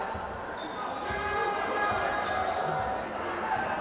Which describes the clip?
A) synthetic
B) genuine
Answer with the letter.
B